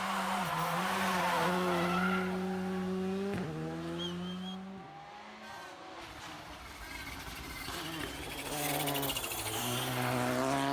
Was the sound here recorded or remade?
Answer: recorded